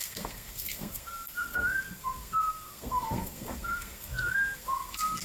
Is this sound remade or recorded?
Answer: remade